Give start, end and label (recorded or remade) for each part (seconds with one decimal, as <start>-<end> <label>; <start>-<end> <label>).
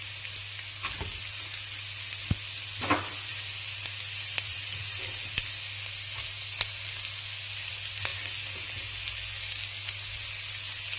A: 0.0-11.0 recorded